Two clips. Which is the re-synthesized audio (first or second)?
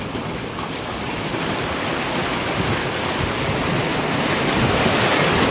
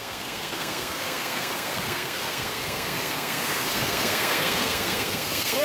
second